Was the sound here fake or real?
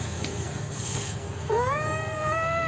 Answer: fake